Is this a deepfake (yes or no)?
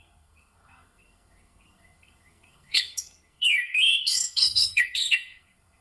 yes